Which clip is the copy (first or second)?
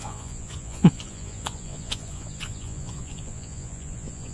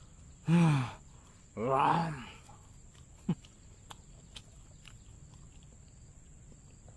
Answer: first